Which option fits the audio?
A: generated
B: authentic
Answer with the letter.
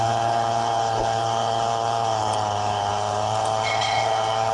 A